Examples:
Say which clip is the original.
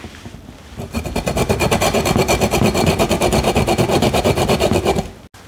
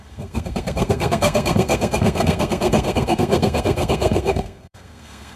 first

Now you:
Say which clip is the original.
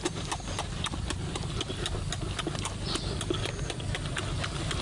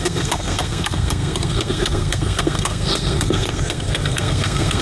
first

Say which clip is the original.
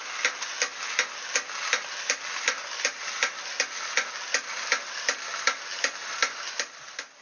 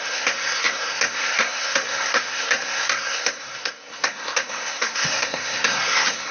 first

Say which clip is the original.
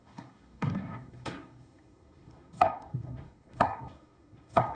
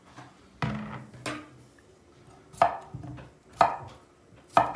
second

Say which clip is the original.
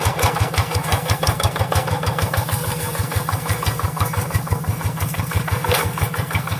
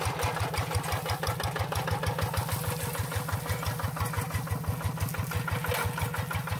second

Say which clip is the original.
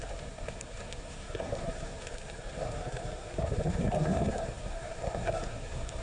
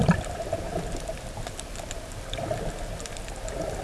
second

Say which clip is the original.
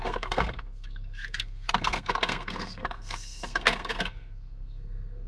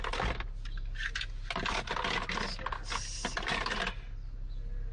second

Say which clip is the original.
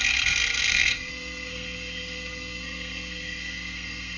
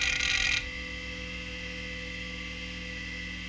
second